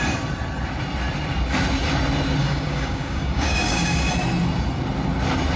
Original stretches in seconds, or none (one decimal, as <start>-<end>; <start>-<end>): 0.0-2.4; 4.1-5.6